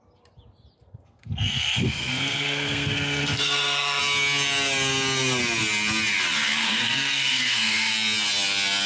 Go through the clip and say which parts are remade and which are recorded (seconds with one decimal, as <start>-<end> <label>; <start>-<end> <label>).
0.0-0.8 recorded; 0.8-4.0 remade; 4.0-6.6 recorded; 6.6-7.9 remade; 7.9-8.9 recorded